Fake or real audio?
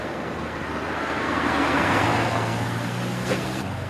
fake